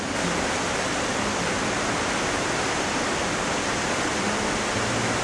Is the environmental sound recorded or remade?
recorded